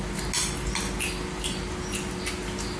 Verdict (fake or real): real